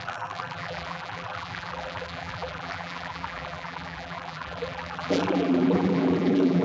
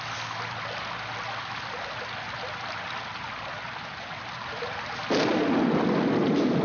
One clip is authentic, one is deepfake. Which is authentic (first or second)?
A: second